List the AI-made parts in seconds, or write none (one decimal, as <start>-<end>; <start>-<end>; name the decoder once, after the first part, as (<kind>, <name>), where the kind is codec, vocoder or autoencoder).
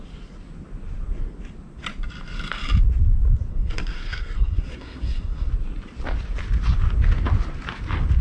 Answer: 3.5-5.5 (codec, SNAC)